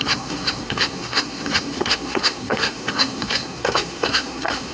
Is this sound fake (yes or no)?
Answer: yes